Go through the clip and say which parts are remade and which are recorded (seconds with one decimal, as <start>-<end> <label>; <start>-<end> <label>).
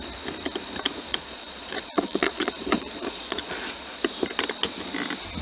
0.0-1.1 recorded; 1.1-4.0 remade; 4.0-5.4 recorded